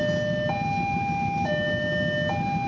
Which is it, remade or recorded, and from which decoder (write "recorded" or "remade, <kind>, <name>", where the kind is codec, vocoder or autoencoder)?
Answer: recorded